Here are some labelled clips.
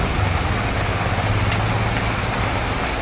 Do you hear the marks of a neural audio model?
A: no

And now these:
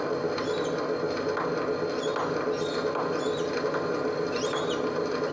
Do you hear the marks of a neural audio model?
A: no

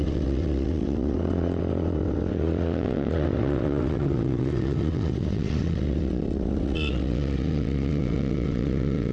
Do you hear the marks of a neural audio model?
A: yes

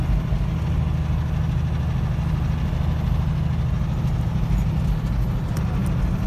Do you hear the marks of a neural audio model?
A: no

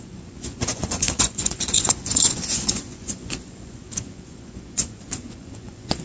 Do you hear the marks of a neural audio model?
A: yes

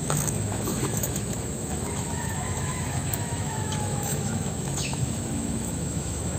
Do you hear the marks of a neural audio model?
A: yes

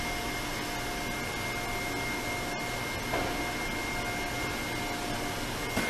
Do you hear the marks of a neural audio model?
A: no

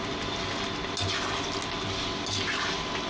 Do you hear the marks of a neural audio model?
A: no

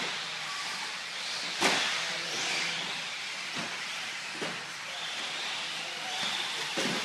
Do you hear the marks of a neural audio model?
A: no